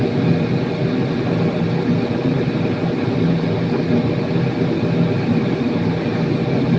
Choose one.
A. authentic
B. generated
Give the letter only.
A